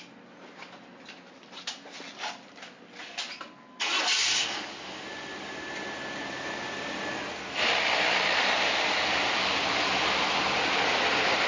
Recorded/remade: recorded